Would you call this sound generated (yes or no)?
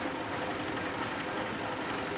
no